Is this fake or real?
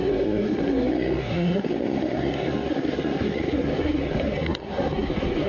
fake